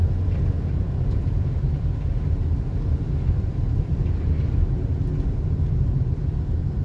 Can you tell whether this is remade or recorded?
recorded